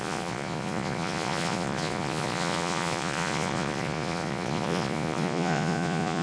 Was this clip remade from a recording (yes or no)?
yes